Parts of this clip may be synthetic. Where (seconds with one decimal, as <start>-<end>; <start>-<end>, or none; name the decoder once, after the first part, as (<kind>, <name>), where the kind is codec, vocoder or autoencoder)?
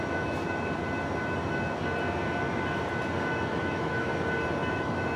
0.0-0.4 (autoencoder, DAC-VAE); 3.5-4.1; 4.7-5.2